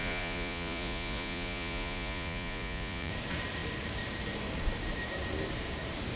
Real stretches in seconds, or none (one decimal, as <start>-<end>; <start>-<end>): 3.1-6.2